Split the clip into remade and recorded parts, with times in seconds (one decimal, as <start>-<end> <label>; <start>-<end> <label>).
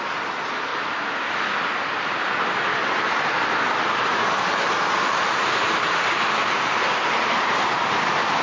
0.0-8.4 recorded